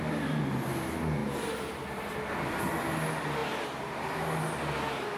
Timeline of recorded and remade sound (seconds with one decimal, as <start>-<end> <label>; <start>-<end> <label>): 0.0-5.2 recorded